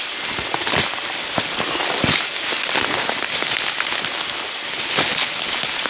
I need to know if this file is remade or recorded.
recorded